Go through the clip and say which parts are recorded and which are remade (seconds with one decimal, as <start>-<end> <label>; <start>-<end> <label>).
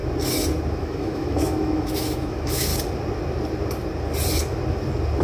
0.0-0.8 recorded; 0.8-2.7 remade; 2.7-5.2 recorded